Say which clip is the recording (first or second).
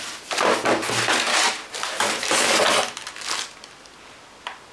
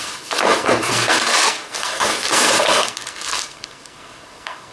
first